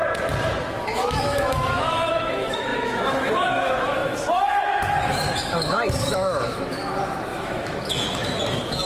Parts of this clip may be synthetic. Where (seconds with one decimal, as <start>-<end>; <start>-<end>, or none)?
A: 0.6-8.9